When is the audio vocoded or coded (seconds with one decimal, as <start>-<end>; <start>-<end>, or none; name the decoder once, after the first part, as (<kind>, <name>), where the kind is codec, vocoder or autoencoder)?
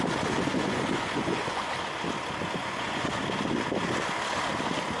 0.5-1.7 (vocoder, Vocos); 2.6-3.2